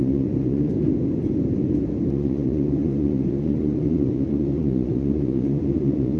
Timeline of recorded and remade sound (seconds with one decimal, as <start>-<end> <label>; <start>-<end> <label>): 0.0-0.7 remade; 0.7-2.1 recorded; 2.1-6.2 remade